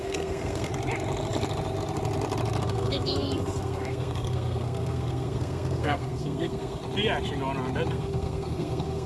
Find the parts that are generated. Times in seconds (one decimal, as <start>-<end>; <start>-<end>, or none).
0.0-0.7; 2.6-6.8; 7.9-9.1